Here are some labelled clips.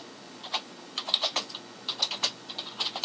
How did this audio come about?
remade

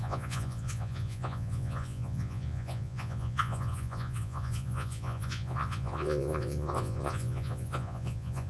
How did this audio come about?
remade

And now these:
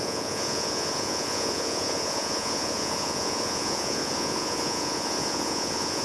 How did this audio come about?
remade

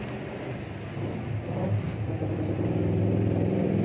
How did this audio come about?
recorded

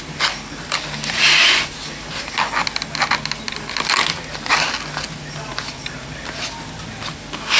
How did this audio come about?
recorded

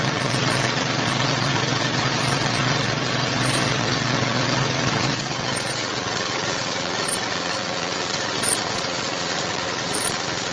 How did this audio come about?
remade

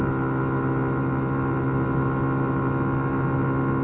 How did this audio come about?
recorded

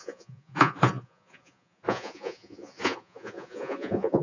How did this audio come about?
remade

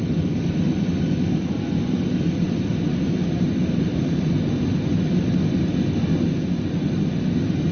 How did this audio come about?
recorded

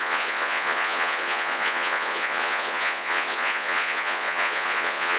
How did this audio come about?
remade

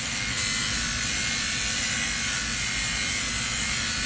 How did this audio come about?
recorded